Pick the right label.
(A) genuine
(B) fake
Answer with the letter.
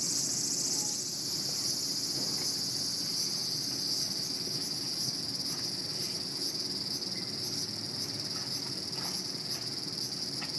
A